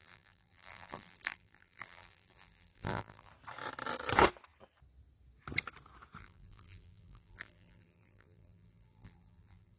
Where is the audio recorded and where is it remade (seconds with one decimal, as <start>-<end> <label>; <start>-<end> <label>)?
0.0-3.3 remade; 3.3-6.2 recorded; 6.2-9.8 remade